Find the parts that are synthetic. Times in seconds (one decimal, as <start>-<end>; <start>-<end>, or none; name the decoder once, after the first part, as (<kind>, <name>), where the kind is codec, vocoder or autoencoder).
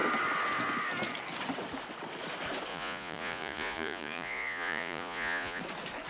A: 2.7-5.6 (vocoder, Vocos)